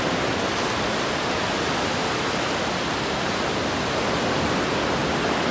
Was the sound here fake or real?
real